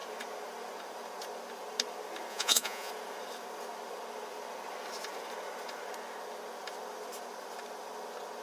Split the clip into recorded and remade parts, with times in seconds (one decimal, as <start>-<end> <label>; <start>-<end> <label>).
0.0-2.3 recorded; 2.3-2.9 remade; 2.9-8.4 recorded